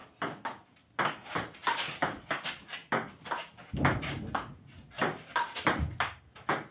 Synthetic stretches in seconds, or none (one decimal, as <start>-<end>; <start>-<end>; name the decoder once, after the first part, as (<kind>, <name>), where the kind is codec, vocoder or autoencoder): none